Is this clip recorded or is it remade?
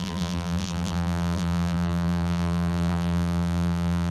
remade